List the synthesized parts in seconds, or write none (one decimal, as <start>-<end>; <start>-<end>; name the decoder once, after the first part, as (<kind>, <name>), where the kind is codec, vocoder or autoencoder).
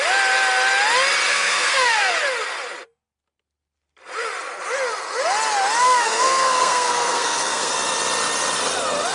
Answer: 1.3-2.1 (codec, SNAC); 5.8-7.7